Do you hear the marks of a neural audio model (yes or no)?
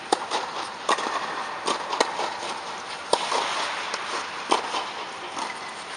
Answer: no